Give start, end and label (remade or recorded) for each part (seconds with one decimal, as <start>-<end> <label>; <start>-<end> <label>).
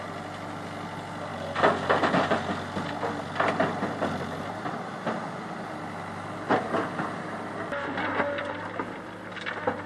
0.0-9.9 recorded